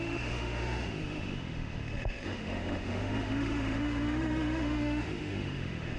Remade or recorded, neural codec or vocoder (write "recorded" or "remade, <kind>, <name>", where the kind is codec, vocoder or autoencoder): remade, autoencoder, DAC-VAE